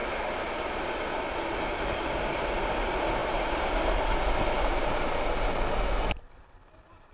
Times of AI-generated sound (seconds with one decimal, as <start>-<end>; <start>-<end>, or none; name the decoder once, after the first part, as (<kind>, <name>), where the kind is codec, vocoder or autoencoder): none